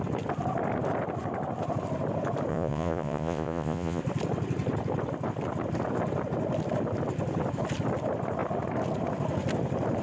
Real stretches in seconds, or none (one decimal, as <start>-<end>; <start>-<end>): 0.0-2.5; 4.0-10.0